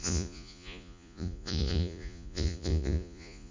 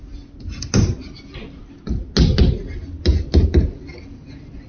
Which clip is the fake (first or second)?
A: first